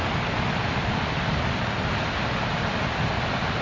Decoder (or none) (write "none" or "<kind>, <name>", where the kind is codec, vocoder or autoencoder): none